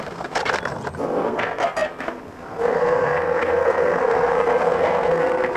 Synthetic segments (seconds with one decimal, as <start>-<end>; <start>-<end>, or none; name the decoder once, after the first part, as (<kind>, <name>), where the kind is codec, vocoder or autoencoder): 0.0-0.4 (codec, SNAC); 1.0-5.6